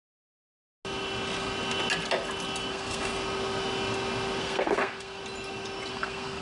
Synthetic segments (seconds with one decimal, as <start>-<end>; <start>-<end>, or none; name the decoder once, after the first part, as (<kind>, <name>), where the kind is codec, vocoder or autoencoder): 0.0-0.4 (codec, SNAC); 2.7-3.1; 4.4-5.2; 5.9-6.4